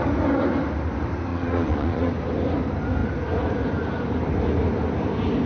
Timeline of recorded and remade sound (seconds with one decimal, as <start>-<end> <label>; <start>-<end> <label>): 0.0-1.3 recorded; 1.3-2.1 remade; 2.1-5.5 recorded